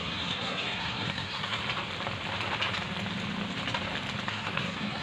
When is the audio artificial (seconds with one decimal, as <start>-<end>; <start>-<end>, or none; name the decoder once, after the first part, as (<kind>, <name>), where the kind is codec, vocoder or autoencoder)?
0.0-1.6 (codec, SNAC); 4.3-5.0